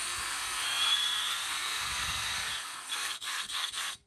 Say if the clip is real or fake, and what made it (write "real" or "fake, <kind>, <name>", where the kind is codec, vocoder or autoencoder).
fake, codec, SNAC